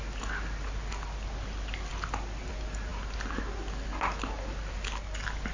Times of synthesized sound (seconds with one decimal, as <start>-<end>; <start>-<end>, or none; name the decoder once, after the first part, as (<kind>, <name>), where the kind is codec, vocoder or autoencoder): none